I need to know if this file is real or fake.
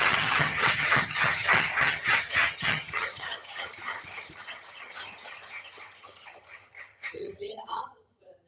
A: fake